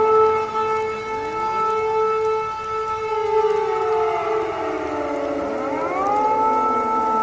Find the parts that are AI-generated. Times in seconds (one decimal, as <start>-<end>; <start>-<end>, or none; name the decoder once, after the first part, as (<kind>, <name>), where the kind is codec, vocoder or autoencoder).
none

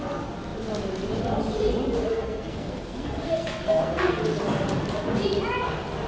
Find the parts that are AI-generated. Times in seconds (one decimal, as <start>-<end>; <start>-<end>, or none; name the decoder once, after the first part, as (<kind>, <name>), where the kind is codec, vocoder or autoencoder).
2.1-4.2 (codec, SNAC)

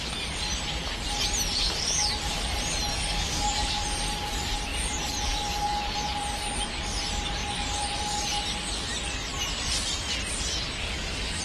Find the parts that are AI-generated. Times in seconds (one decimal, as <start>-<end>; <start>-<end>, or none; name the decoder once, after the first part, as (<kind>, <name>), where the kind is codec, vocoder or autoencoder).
2.9-3.8 (codec, DAC); 10.8-11.4